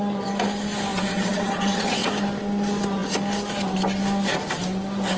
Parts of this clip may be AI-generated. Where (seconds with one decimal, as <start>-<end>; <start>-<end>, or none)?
0.9-2.1